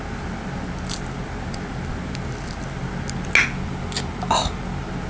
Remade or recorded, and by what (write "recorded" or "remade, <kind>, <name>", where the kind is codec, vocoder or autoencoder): recorded